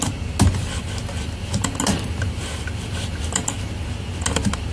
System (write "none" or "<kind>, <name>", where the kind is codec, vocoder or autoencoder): none